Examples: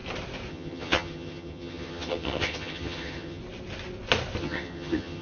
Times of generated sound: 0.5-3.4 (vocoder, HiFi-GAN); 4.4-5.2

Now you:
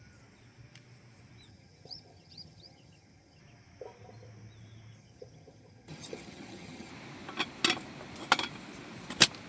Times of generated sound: 1.5-3.4 (vocoder, HiFi-GAN); 5.0-6.9

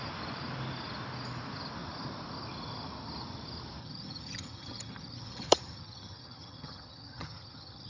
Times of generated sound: 3.8-7.9 (vocoder, HiFi-GAN)

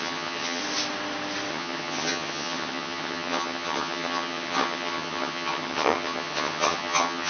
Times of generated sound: 0.0-0.6 (vocoder, HiFi-GAN); 1.5-7.3

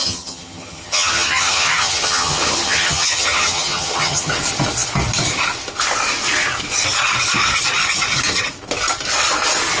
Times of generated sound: 0.0-4.3 (vocoder, HiFi-GAN)